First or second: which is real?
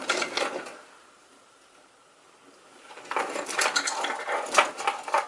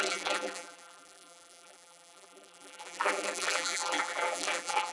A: first